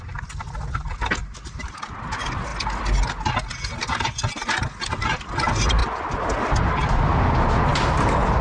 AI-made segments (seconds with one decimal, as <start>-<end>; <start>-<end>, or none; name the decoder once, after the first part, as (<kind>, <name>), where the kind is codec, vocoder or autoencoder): 1.2-1.8 (vocoder, BigVGAN v2)